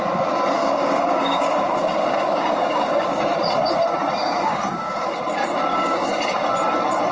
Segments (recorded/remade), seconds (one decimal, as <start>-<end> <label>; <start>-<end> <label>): 0.0-0.6 recorded; 0.6-3.2 remade; 3.2-4.2 recorded; 4.2-5.2 remade; 5.2-5.7 recorded; 5.7-6.2 remade; 6.2-7.1 recorded